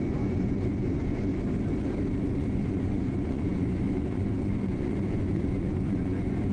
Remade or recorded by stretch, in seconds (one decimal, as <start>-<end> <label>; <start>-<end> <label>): 0.0-1.3 remade; 1.3-2.2 recorded; 2.2-6.5 remade